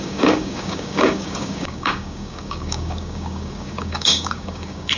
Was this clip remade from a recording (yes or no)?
yes